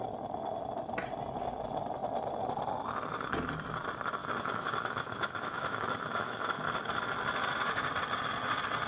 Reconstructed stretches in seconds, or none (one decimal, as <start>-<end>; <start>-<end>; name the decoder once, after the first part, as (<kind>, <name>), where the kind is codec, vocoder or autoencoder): 4.2-6.6 (autoencoder, DAC-VAE)